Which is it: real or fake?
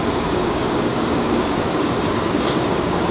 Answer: fake